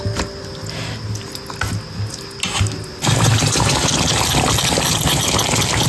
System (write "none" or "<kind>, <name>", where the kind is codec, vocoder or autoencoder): none